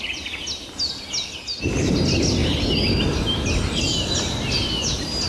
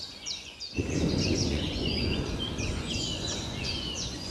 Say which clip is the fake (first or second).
second